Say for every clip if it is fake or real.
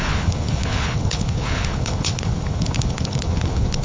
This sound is fake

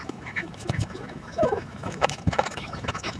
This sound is fake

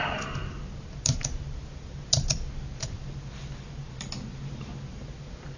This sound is real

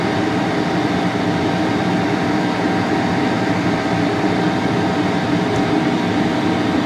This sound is real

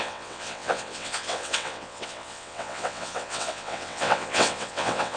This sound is fake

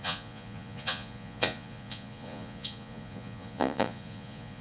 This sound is fake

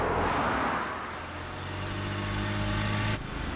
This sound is real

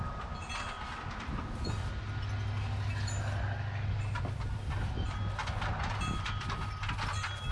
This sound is real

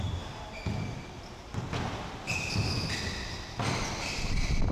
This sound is real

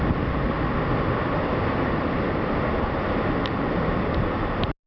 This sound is real